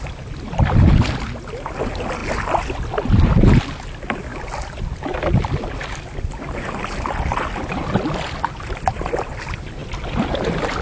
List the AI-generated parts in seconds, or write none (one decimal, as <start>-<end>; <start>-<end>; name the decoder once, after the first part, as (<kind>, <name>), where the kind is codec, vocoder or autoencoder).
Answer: none